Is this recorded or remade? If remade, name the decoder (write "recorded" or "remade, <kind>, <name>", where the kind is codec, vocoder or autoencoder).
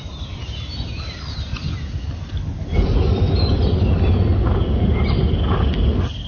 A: recorded